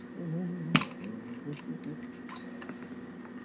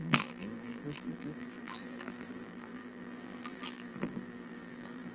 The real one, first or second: first